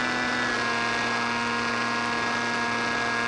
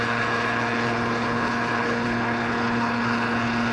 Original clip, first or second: first